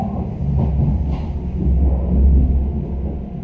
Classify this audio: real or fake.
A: real